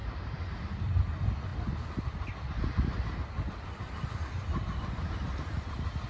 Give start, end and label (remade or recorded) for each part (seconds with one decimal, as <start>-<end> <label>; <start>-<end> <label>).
0.0-0.7 remade; 0.7-6.1 recorded